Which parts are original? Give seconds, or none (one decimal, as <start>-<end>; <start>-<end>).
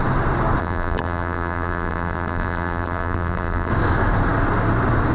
0.0-0.6; 3.7-5.1